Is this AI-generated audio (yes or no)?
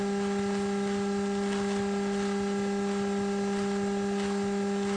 no